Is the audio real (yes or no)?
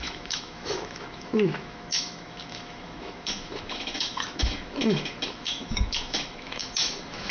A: no